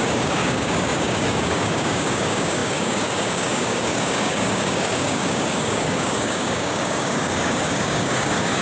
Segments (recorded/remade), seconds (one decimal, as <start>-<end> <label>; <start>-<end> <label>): 0.0-8.6 remade